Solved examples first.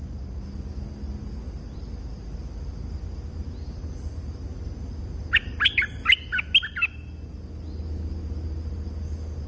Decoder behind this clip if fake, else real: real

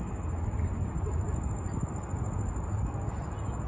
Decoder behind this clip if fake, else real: real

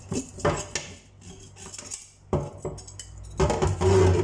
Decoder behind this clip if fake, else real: real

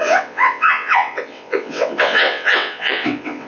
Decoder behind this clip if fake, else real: fake, vocoder, WaveNeXt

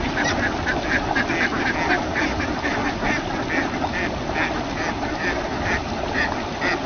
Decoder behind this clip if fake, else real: real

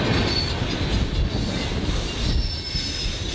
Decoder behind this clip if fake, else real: real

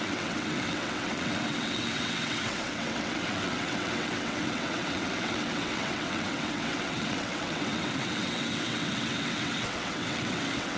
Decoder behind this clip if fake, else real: fake, vocoder, WaveNeXt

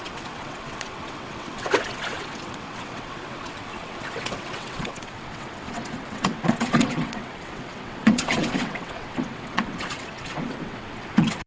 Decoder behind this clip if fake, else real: fake, vocoder, WaveNeXt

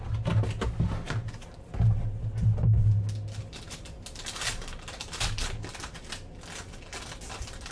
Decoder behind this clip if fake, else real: real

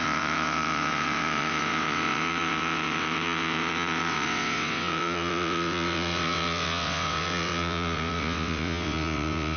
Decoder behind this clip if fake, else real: fake, vocoder, WaveNeXt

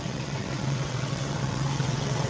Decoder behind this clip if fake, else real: fake, vocoder, WaveNeXt